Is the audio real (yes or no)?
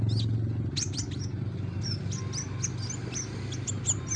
yes